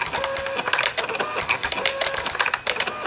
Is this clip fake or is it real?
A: real